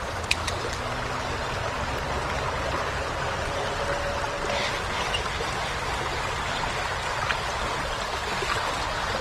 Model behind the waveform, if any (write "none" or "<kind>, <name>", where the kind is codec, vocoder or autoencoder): none